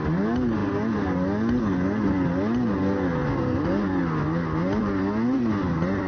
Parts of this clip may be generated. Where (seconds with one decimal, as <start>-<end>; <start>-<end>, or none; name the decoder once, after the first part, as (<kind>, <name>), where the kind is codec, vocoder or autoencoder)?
4.8-6.1 (vocoder, BigVGAN v2)

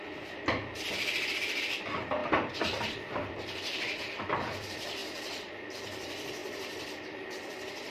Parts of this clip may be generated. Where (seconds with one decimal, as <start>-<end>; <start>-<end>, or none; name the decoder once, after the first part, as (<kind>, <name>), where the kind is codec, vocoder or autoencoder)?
2.2-2.9 (vocoder, BigVGAN v2); 6.4-7.2

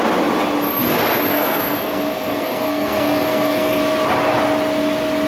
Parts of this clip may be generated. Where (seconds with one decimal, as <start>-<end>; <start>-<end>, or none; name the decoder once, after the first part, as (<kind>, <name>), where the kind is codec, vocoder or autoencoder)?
1.3-3.8 (codec, SNAC)

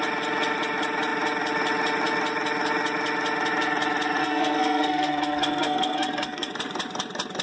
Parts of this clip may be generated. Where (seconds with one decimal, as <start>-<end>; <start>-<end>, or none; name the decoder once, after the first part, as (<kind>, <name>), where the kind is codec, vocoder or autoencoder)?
4.2-6.5 (codec, SNAC)

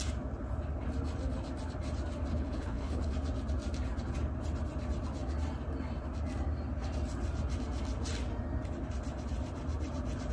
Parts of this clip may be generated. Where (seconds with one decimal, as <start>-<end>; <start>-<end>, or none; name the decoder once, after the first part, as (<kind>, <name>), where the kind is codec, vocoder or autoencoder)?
2.3-3.1 (codec, HILCodec)

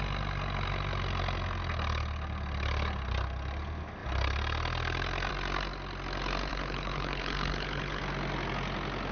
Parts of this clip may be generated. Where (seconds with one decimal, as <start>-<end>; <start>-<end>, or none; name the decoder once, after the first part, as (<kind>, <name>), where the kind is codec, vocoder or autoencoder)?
6.5-8.0 (codec, HILCodec)

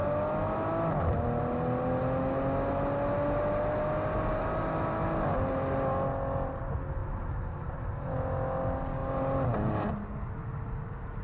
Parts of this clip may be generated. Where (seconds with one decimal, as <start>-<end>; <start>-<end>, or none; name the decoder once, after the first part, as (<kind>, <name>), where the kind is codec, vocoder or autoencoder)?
none